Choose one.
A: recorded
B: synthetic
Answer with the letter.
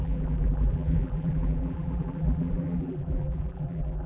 B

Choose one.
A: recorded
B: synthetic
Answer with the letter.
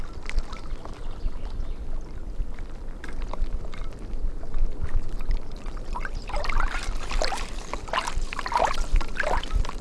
B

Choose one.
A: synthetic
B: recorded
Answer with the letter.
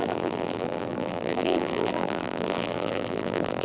A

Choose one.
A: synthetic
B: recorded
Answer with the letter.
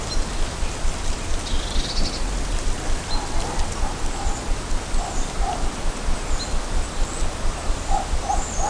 B